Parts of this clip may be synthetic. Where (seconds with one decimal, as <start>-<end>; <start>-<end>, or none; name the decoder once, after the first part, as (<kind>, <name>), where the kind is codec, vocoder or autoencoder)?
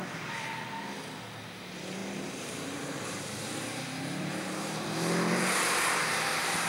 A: 2.0-6.0 (vocoder, BigVGAN v2)